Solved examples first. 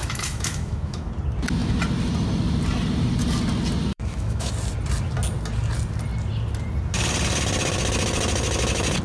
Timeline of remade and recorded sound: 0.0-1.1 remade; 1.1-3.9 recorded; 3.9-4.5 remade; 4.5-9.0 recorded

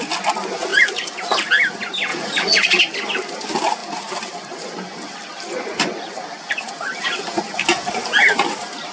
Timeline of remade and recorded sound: 0.0-2.1 recorded; 2.1-2.8 remade; 2.8-8.9 recorded

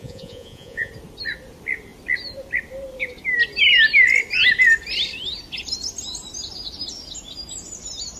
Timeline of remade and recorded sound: 0.0-0.9 remade; 0.9-8.2 recorded

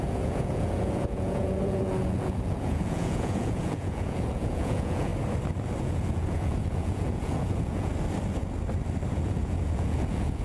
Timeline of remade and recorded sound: 0.0-5.1 remade; 5.1-5.8 recorded; 5.8-7.9 remade; 7.9-9.1 recorded; 9.1-10.4 remade

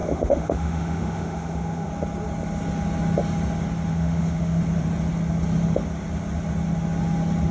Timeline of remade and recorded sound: 0.0-1.9 remade; 1.9-3.9 recorded; 3.9-4.6 remade; 4.6-7.5 recorded

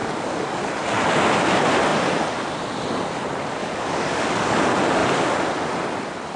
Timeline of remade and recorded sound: 0.0-0.6 remade; 0.6-3.6 recorded; 3.6-4.6 remade; 4.6-6.4 recorded